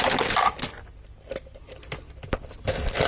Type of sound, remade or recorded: recorded